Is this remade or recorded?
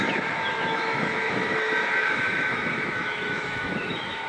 remade